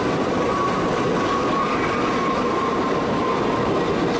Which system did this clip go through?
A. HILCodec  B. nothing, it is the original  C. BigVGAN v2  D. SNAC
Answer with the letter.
B